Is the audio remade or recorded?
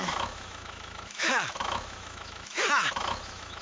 remade